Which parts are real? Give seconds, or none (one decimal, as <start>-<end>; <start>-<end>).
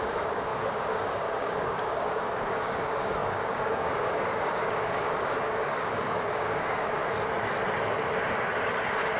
7.0-9.2